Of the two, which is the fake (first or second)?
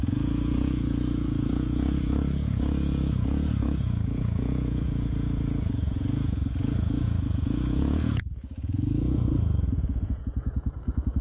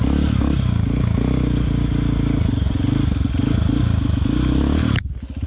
first